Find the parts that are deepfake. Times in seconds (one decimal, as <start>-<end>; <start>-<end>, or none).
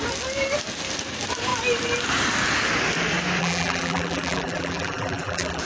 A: 3.4-5.6